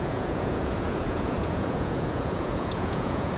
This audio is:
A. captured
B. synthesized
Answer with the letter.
B